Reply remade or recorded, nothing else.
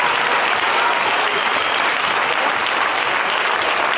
recorded